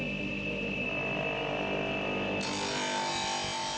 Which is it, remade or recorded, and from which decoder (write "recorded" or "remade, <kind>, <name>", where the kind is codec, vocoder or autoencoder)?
recorded